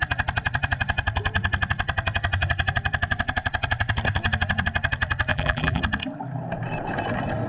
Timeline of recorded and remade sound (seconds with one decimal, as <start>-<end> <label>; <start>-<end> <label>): 0.0-5.3 recorded; 5.3-5.8 remade; 5.8-7.5 recorded